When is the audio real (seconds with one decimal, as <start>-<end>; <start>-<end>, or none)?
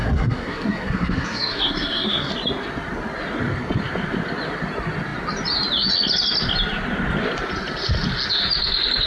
2.3-9.1